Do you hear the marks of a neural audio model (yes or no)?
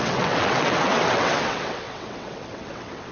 yes